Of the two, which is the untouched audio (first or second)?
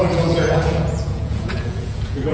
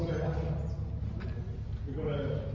second